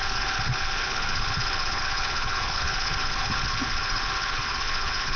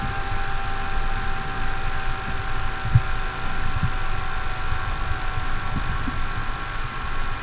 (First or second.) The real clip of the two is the second